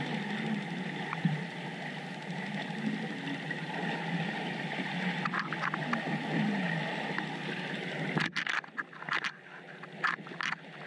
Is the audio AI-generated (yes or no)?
no